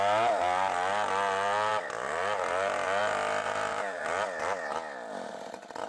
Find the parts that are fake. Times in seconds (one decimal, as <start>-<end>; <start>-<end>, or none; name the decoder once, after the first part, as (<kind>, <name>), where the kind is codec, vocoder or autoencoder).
3.4-4.0 (vocoder, BigVGAN v2)